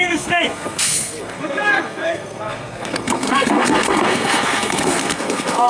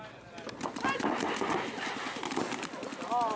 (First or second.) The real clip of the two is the second